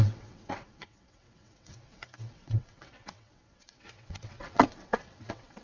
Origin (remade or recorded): remade